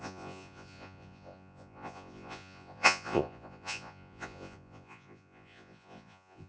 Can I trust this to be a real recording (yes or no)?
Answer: no